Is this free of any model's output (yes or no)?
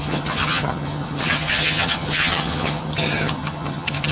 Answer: no